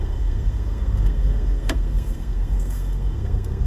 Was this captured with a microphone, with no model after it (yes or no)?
no